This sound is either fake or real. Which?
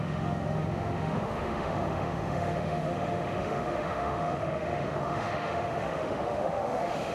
fake